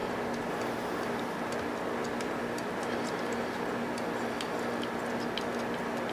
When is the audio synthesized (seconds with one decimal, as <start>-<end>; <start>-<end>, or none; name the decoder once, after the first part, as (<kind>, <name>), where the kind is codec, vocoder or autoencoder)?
2.0-3.7 (vocoder, BigVGAN v2)